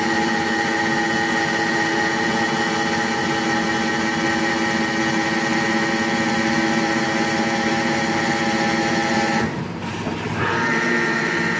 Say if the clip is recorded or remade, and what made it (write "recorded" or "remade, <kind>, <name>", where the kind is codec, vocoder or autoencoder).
remade, vocoder, BigVGAN v2